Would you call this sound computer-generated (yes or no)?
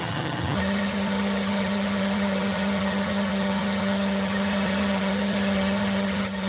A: yes